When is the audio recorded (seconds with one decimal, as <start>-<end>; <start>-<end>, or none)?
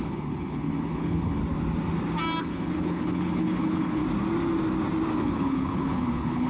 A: 1.4-2.4; 4.0-5.2